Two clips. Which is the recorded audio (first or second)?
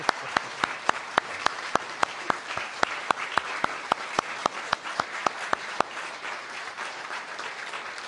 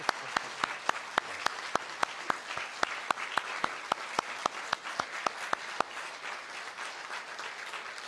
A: second